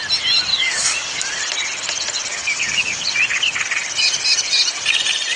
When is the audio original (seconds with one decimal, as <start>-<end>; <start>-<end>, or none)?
0.0-0.5; 1.4-2.3; 3.0-5.4

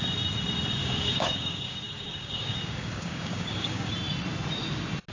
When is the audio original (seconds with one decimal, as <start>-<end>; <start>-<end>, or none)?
0.0-0.8; 3.9-5.1

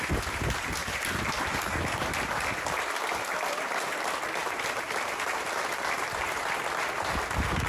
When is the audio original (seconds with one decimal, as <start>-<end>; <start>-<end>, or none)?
0.0-1.5; 2.1-7.7

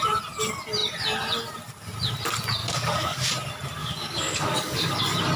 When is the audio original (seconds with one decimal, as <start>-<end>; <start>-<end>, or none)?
0.0-2.6; 3.3-3.8; 5.0-5.4

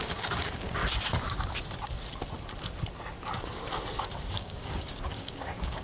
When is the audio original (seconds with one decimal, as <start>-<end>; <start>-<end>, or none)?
0.8-4.3

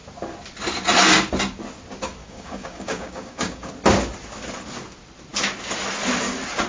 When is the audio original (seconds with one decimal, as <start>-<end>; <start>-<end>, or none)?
0.0-2.2; 3.7-6.7

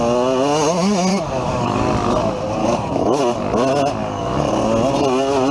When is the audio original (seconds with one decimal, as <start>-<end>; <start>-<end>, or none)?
0.0-1.1; 1.9-2.6; 3.2-4.0; 4.5-5.5

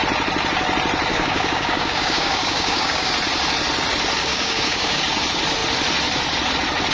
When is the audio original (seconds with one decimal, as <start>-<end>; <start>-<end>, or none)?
0.0-1.1; 3.1-4.2; 5.0-6.9